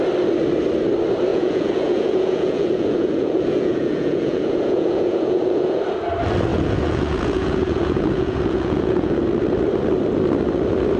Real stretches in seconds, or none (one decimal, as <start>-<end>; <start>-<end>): 0.0-1.3; 5.8-6.5; 9.2-11.0